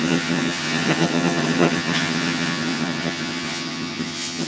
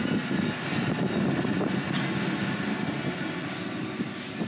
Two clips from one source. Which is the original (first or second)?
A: second